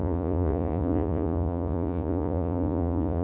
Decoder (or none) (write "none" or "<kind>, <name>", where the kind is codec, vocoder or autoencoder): vocoder, Vocos